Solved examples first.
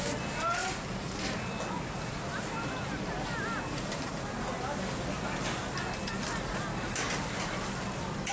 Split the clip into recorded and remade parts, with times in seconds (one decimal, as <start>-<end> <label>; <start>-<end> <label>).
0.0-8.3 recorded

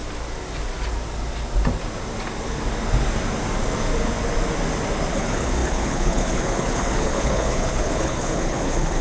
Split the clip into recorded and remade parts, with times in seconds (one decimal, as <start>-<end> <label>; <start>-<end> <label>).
0.0-5.1 recorded; 5.1-9.0 remade

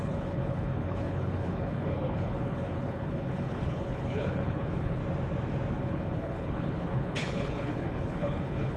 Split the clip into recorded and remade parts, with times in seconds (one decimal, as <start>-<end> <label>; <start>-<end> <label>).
0.0-5.0 remade; 5.0-5.7 recorded; 5.7-8.8 remade